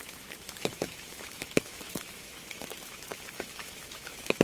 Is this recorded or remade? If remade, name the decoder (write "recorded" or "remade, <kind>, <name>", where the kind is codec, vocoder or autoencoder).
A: remade, autoencoder, DAC-VAE